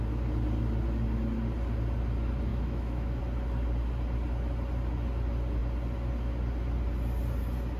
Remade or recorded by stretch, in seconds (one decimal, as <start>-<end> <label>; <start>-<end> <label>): 0.0-2.5 recorded; 2.5-3.2 remade; 3.2-7.8 recorded